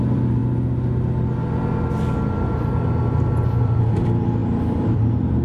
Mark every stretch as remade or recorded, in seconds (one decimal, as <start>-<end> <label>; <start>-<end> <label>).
0.0-0.4 remade; 0.4-3.6 recorded; 3.6-5.4 remade